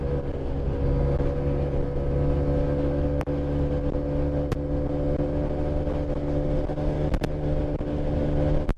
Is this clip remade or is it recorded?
recorded